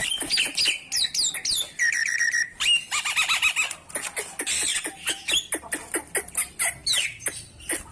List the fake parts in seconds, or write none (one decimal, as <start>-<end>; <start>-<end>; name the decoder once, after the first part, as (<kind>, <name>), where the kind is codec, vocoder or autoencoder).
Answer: none

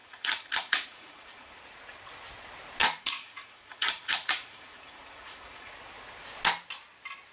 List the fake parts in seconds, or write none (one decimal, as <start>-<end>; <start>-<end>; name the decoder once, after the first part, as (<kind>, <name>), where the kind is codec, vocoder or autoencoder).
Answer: 0.0-1.6 (vocoder, Vocos); 2.8-5.7

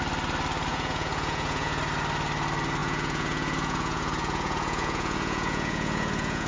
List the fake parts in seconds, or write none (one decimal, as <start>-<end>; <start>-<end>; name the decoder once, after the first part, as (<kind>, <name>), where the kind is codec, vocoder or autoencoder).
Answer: 0.7-1.8 (vocoder, Vocos); 2.8-6.5